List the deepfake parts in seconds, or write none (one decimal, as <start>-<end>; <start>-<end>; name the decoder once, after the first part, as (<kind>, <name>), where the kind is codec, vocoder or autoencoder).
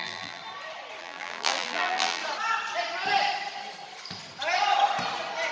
0.0-0.4 (vocoder, BigVGAN v2); 1.0-2.2